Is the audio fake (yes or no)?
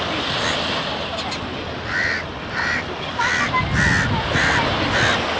no